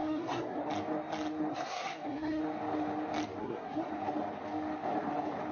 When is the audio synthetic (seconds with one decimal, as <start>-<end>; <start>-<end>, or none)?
0.0-0.6; 1.5-2.4; 3.4-3.9